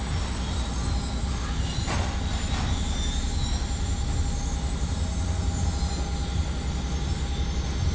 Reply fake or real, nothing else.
real